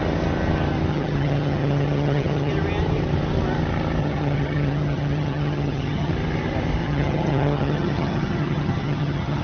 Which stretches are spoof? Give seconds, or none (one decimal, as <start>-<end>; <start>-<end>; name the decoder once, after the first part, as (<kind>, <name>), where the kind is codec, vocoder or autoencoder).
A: 0.9-2.5 (vocoder, HiFi-GAN); 4.0-6.1; 6.8-9.4